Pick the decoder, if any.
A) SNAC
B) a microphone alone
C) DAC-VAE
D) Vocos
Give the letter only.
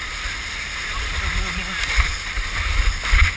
B